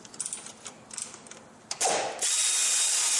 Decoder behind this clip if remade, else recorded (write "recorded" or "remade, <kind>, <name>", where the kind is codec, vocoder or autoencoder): recorded